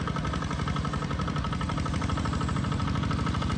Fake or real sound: real